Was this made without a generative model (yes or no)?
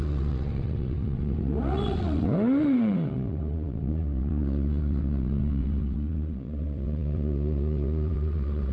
no